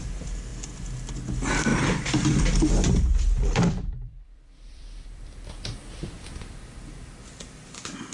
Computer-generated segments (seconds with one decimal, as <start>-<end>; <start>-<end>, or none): 1.7-5.5